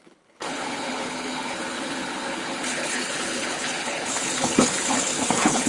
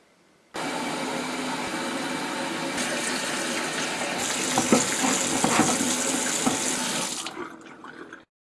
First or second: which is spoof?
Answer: first